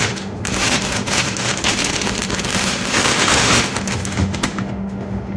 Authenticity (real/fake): fake